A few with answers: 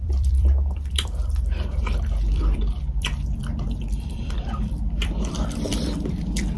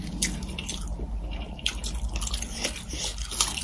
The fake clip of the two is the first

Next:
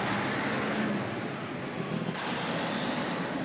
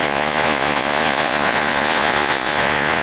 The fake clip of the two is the second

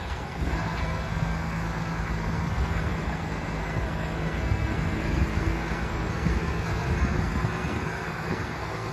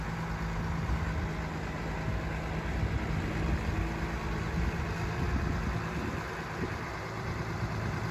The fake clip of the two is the first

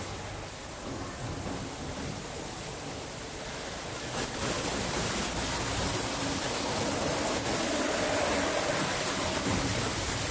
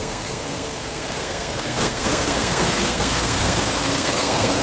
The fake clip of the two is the second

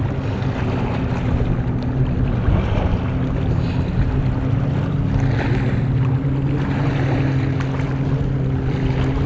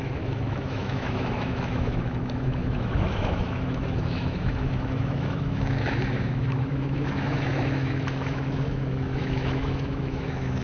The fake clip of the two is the second